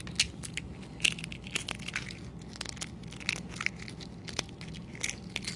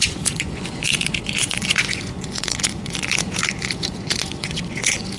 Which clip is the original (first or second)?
first